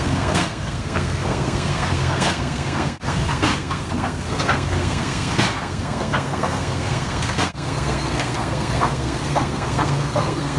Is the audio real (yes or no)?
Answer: no